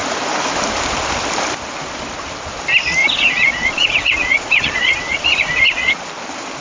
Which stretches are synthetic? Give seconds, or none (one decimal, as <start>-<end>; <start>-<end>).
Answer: 3.0-6.0